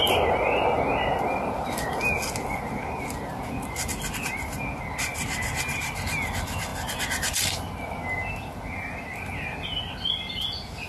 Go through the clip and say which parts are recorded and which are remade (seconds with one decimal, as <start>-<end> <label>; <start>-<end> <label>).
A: 0.0-10.9 recorded